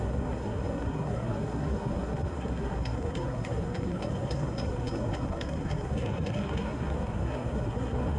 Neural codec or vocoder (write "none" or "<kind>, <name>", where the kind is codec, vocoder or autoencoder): codec, SNAC